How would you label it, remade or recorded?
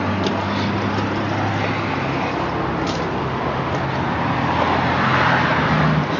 recorded